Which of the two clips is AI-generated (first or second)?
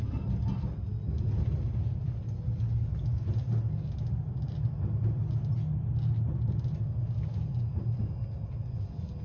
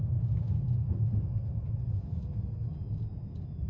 second